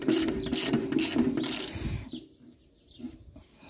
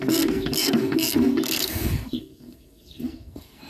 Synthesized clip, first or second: second